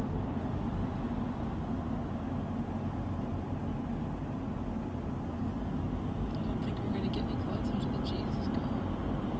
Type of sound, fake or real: real